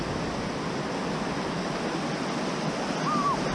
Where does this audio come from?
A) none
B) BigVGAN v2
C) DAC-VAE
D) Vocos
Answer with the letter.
A